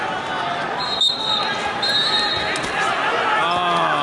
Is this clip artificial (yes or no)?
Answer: no